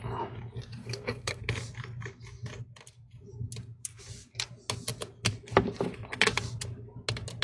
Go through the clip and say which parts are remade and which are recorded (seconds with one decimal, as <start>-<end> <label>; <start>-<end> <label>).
0.0-0.8 recorded; 0.8-1.4 remade; 1.4-7.4 recorded